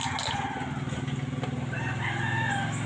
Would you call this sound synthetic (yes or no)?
no